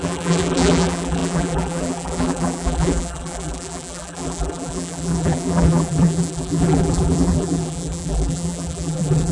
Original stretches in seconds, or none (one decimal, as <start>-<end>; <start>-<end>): none